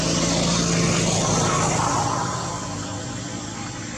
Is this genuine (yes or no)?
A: yes